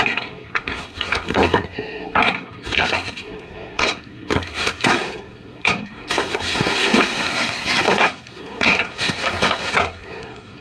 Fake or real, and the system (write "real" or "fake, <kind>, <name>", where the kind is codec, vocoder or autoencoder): fake, codec, SNAC